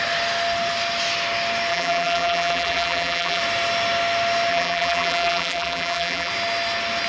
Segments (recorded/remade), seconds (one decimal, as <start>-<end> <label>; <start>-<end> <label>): 0.0-1.7 recorded; 1.7-3.4 remade; 3.4-4.5 recorded; 4.5-6.3 remade; 6.3-7.1 recorded